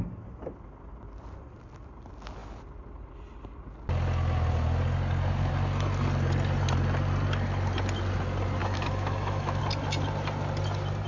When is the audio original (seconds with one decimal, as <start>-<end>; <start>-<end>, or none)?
0.0-8.6; 9.6-11.1